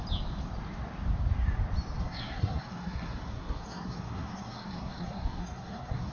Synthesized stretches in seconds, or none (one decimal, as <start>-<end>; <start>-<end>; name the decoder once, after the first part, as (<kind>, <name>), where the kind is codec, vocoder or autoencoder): 2.0-6.1 (codec, SNAC)